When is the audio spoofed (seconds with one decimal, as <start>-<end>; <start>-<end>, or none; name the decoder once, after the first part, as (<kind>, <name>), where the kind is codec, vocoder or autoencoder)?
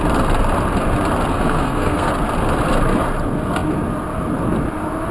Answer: 1.3-2.1 (codec, SNAC)